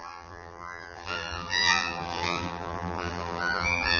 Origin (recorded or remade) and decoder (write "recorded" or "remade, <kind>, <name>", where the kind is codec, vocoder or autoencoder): remade, vocoder, BigVGAN v2